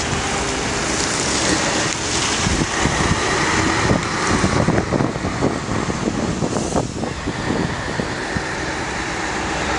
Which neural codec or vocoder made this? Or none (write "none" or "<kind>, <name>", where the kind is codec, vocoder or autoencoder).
none